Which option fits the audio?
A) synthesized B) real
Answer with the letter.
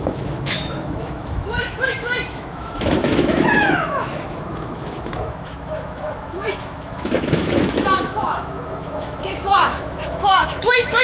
A